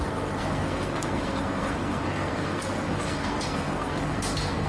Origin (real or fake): fake